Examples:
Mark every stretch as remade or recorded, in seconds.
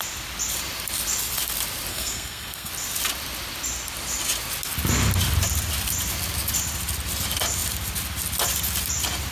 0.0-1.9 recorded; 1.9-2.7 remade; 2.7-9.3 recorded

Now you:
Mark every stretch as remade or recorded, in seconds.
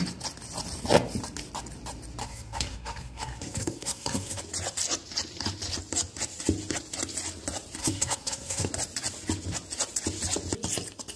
0.0-2.2 recorded; 2.2-4.4 remade; 4.4-7.8 recorded; 7.8-8.7 remade; 8.7-11.2 recorded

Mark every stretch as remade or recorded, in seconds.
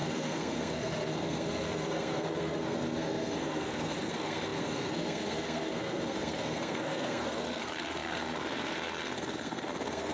0.0-10.1 remade